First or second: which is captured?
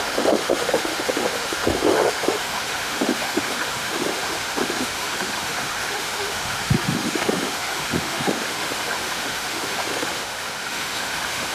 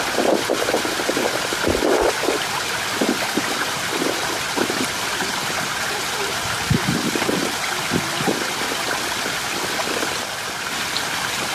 second